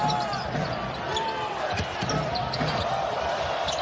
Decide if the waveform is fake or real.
real